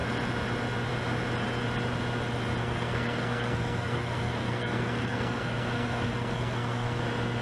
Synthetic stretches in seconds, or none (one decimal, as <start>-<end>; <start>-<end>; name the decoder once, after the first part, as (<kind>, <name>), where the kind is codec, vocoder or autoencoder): 2.6-7.0 (codec, SNAC)